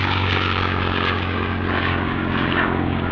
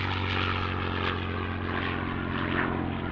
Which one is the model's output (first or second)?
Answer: first